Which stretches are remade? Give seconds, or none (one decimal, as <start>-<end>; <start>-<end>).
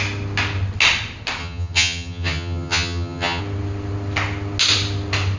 1.4-3.4